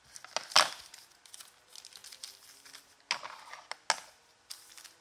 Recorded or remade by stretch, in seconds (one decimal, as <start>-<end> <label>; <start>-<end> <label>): 0.0-5.0 recorded